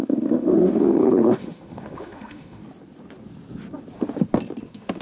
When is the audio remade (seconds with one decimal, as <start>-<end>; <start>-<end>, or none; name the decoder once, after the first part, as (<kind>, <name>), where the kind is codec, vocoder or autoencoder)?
0.0-2.6 (autoencoder, DAC-VAE); 4.6-5.0